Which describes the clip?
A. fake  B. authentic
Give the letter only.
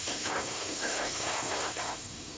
A